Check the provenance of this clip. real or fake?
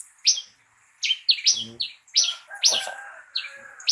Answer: real